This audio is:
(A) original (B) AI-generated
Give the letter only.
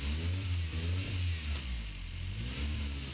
A